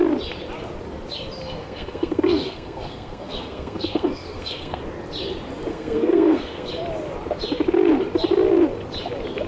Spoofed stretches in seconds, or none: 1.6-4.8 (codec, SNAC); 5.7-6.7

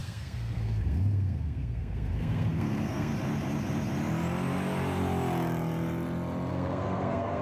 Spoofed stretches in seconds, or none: 0.0-3.1 (codec, SNAC); 6.5-7.4

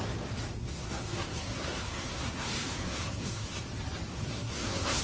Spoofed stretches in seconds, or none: 0.6-3.6 (codec, SNAC); 4.1-5.0

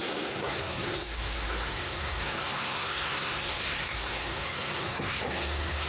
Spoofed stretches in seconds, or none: 0.0-5.9 (codec, SNAC)